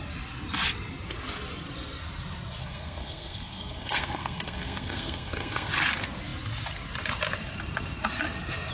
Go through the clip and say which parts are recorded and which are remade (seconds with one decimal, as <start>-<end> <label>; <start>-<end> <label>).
0.0-2.6 recorded; 2.6-5.7 remade; 5.7-8.7 recorded